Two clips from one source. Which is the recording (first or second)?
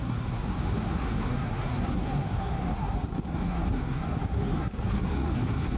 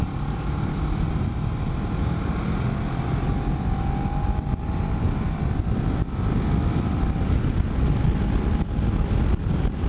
second